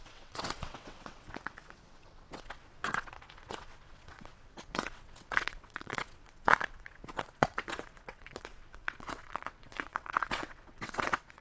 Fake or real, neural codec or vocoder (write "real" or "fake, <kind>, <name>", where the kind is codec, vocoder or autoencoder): fake, vocoder, WaveNeXt